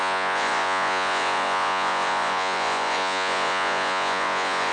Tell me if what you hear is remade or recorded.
remade